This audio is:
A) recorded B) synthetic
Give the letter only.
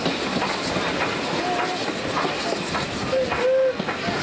A